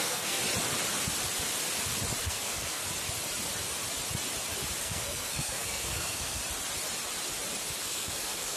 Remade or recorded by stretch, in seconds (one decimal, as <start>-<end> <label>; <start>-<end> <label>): 0.0-0.4 remade; 0.4-2.2 recorded; 2.2-2.8 remade; 2.8-4.8 recorded; 4.8-6.4 remade; 6.4-7.8 recorded; 7.8-8.6 remade